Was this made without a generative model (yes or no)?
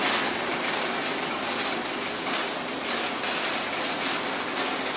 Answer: yes